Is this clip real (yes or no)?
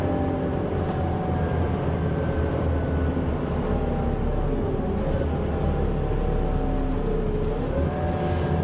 yes